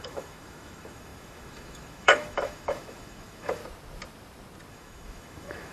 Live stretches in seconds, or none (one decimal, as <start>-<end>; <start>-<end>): 3.6-4.7